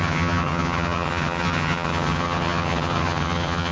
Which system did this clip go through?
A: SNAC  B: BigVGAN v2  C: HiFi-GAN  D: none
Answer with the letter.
C